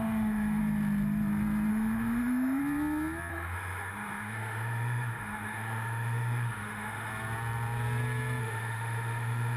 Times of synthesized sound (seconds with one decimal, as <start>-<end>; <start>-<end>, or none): 0.0-0.6; 1.7-2.6; 3.3-7.1; 8.4-9.6